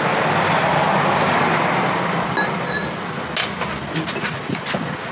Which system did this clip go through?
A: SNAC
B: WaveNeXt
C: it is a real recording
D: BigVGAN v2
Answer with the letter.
C